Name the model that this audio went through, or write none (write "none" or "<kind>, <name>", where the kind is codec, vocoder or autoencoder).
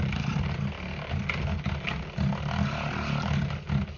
none